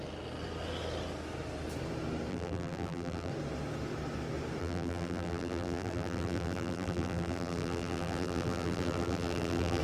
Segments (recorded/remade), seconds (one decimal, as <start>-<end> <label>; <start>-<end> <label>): 0.0-2.3 recorded; 2.3-3.3 remade; 3.3-4.6 recorded; 4.6-9.8 remade

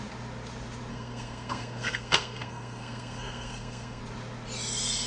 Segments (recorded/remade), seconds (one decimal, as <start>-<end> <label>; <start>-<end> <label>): 0.0-0.9 recorded; 0.9-4.0 remade; 4.0-5.1 recorded

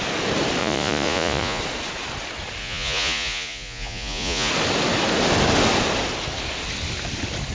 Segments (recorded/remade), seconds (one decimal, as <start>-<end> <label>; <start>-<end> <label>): 0.0-0.6 recorded; 0.6-1.6 remade; 1.6-2.6 recorded; 2.6-4.5 remade; 4.5-7.5 recorded

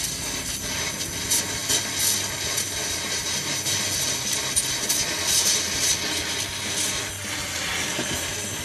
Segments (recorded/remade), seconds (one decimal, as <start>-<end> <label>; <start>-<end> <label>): 0.0-8.6 recorded